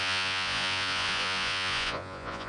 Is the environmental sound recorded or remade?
remade